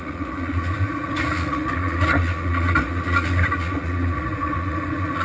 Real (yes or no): no